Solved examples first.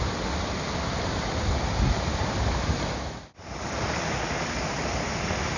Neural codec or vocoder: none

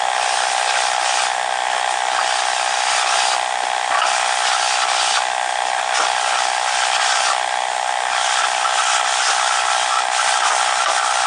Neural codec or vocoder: none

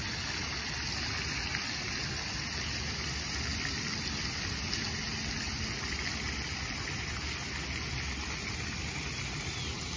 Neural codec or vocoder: none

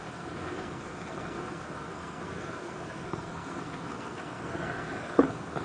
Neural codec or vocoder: codec, SNAC